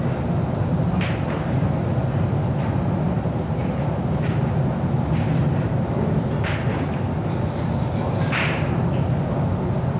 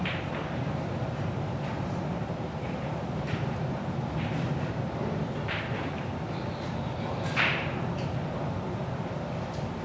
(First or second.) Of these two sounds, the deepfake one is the second